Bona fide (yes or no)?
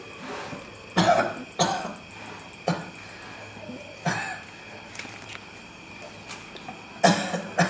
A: yes